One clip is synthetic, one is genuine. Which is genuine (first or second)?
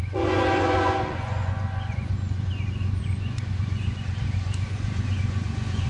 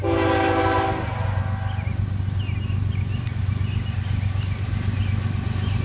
second